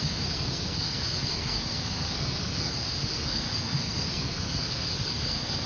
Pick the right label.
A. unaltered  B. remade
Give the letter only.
B